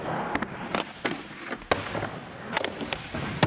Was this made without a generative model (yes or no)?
yes